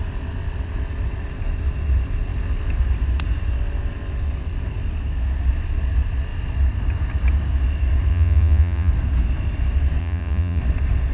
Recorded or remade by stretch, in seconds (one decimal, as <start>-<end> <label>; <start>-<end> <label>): 0.0-8.1 recorded; 8.1-8.9 remade; 8.9-10.0 recorded; 10.0-10.6 remade; 10.6-11.1 recorded